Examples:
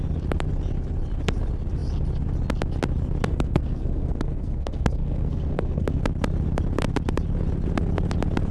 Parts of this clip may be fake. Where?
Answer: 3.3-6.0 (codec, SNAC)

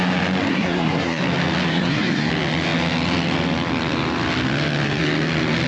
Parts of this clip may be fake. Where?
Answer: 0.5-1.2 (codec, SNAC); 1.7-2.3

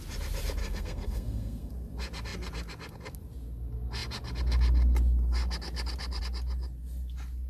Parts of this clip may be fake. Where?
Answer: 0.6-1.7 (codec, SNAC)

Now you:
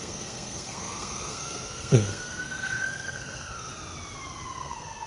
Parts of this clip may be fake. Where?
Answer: 0.0-3.7 (codec, SNAC); 4.5-5.1

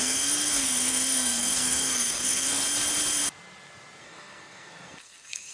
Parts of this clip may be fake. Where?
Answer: 0.0-2.6 (codec, SNAC); 4.0-5.5

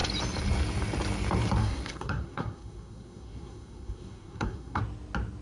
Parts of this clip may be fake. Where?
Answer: 1.6-4.8 (codec, SNAC)

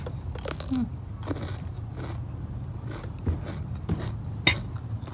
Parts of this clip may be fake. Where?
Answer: none